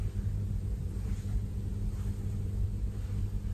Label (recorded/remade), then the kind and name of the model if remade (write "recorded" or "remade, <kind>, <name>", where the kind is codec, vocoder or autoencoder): recorded